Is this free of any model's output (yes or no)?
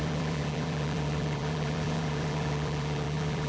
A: no